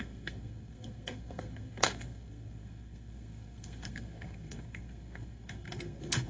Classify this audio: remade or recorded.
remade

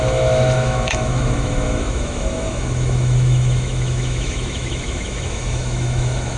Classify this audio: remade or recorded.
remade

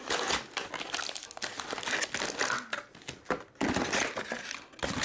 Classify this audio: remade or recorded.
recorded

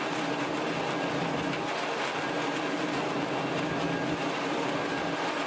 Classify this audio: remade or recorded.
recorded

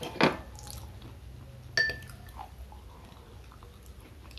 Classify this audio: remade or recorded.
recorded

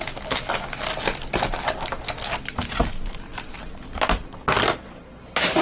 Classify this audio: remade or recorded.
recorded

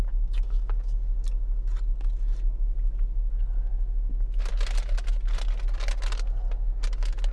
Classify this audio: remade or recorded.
recorded